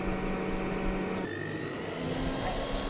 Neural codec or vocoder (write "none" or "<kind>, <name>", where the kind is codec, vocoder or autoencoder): none